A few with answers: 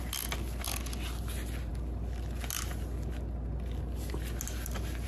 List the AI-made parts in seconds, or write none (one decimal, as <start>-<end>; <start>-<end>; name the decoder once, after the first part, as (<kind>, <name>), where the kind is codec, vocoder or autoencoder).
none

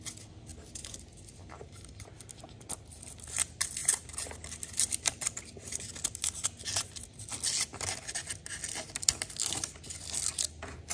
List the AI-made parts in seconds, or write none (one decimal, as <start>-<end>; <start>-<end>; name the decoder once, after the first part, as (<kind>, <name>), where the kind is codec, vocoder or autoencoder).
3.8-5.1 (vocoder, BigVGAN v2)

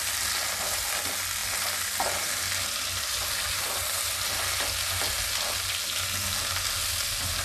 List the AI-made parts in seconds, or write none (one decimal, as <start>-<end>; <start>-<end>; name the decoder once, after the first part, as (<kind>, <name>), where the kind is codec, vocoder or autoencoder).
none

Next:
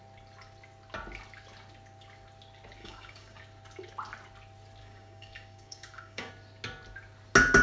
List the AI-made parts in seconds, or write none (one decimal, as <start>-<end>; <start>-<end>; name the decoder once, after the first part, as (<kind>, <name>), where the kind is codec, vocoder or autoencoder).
2.8-3.4 (codec, DAC); 4.8-6.3

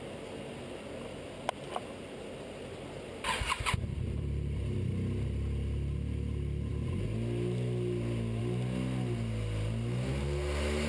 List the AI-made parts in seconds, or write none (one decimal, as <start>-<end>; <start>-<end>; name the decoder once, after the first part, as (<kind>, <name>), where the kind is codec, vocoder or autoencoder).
3.9-4.9 (vocoder, BigVGAN v2)